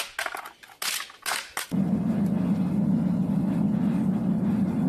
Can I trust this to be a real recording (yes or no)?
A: yes